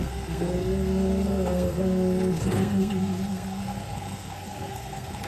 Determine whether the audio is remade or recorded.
remade